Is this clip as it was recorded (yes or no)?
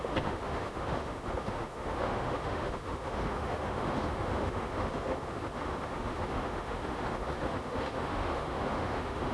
no